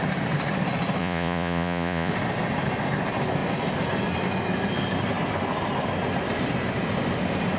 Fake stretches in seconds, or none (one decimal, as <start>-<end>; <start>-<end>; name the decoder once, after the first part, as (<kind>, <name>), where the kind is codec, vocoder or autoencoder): 1.0-2.1 (vocoder, Vocos)